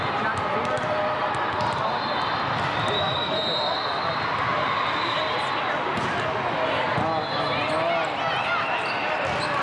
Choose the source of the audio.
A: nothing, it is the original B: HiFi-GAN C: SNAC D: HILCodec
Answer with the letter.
A